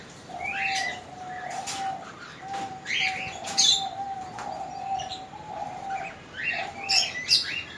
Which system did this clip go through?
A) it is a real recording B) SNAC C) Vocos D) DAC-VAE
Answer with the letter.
A